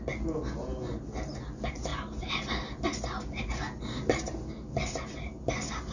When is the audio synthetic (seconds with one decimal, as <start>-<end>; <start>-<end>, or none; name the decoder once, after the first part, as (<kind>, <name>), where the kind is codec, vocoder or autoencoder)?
none